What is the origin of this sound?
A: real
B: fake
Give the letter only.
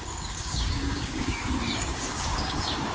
B